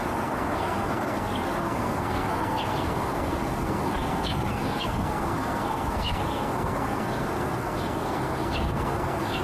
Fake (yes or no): yes